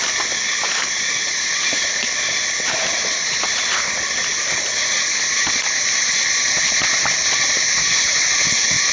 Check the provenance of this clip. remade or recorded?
recorded